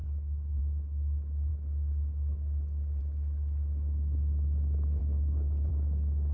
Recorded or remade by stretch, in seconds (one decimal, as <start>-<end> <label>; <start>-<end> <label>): 0.0-0.6 remade; 0.6-5.0 recorded; 5.0-5.7 remade; 5.7-6.3 recorded